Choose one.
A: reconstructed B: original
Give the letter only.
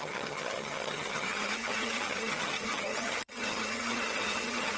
A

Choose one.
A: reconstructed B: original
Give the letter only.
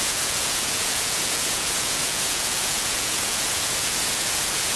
A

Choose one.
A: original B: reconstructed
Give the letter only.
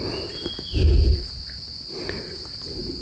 A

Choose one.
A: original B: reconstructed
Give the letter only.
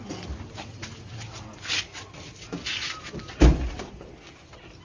A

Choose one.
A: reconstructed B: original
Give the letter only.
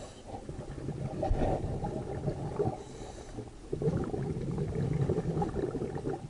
B